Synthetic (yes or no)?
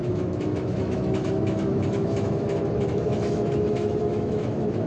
yes